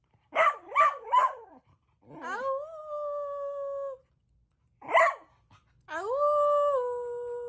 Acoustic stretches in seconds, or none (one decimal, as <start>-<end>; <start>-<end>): 1.8-7.5